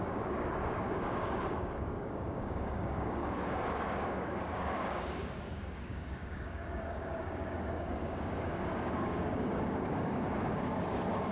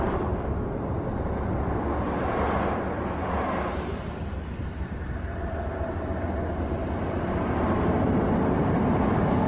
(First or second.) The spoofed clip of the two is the first